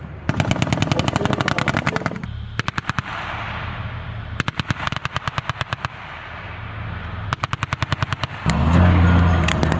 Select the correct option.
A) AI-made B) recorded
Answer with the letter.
B